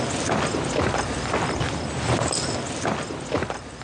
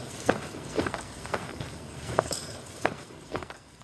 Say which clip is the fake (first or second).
second